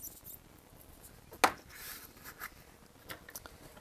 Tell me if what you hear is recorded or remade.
recorded